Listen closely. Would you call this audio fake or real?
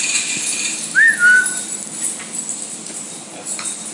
real